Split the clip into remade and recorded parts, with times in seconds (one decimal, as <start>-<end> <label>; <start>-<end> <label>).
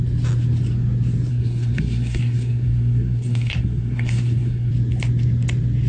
0.0-1.3 recorded; 1.3-4.7 remade; 4.7-5.9 recorded